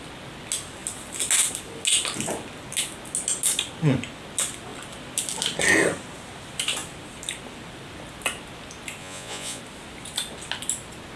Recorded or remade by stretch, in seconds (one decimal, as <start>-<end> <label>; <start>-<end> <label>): 0.0-9.0 recorded; 9.0-9.6 remade; 9.6-11.2 recorded